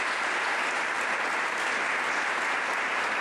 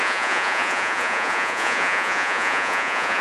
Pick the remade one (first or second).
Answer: second